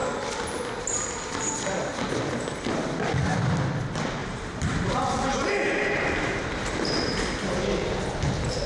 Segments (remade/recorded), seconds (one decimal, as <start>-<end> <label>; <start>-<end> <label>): 0.0-4.2 recorded; 4.2-7.2 remade; 7.2-8.7 recorded